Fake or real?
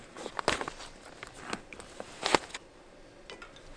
real